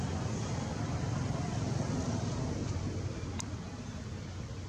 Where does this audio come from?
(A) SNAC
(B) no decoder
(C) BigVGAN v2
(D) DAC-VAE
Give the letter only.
B